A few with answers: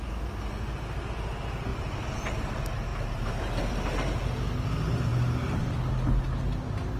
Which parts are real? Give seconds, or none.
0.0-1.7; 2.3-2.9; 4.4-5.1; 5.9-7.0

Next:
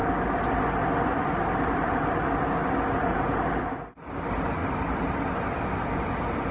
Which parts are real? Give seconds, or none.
0.0-6.5

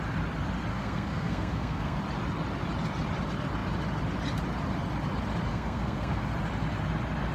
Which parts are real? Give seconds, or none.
0.0-0.7; 2.0-5.5; 6.2-7.3